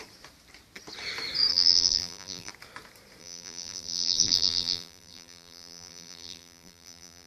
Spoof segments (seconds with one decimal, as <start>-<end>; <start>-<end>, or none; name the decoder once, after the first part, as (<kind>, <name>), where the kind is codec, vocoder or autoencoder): 1.5-2.5 (vocoder, BigVGAN v2); 3.2-7.3